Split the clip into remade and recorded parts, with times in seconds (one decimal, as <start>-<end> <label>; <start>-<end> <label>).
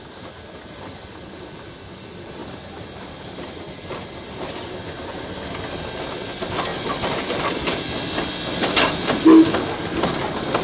0.0-10.6 recorded